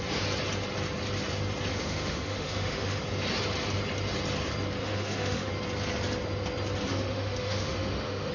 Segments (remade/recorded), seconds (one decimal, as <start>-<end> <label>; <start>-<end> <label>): 0.0-1.7 recorded; 1.7-3.0 remade; 3.0-4.8 recorded; 4.8-5.5 remade; 5.5-6.9 recorded; 6.9-8.3 remade